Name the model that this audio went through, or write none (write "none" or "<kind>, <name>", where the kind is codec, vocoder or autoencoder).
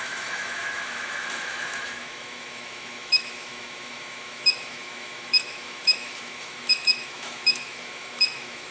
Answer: autoencoder, DAC-VAE